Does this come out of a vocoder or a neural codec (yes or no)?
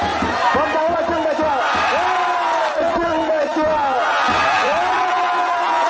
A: no